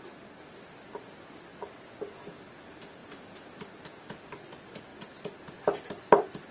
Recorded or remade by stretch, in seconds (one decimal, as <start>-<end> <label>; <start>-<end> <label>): 0.0-6.5 recorded